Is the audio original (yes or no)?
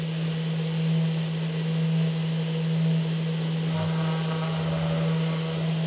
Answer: yes